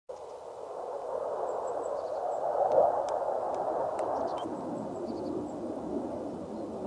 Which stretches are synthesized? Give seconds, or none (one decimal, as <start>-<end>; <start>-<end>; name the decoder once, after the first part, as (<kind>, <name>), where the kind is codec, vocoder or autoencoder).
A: 3.1-4.3 (vocoder, BigVGAN v2); 6.3-6.9